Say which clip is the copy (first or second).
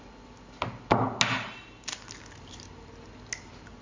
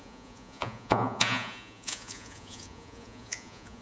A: second